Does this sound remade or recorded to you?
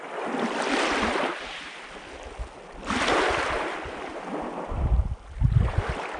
recorded